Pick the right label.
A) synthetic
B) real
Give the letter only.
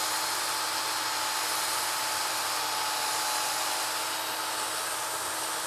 B